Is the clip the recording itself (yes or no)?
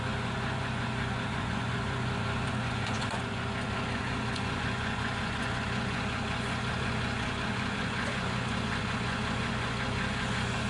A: no